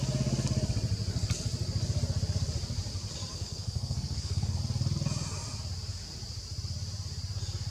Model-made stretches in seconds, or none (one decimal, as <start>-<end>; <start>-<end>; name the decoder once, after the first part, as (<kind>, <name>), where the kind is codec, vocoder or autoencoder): 3.3-4.6 (codec, SNAC)